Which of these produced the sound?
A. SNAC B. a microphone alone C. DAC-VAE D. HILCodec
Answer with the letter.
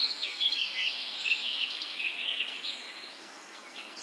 A